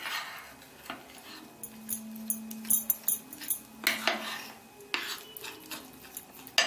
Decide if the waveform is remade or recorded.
recorded